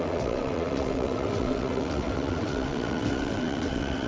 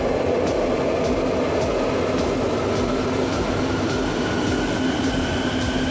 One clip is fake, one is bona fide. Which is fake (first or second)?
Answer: first